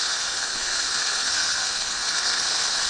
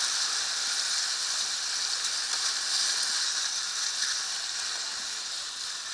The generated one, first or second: first